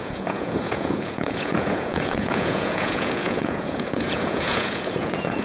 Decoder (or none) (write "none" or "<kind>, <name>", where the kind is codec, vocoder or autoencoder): vocoder, Vocos